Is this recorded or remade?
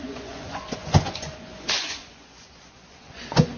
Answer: remade